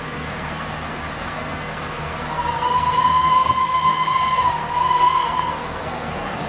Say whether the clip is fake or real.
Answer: fake